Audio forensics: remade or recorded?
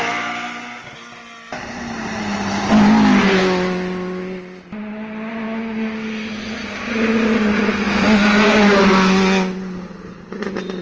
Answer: recorded